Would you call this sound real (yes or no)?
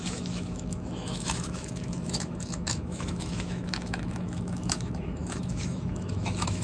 no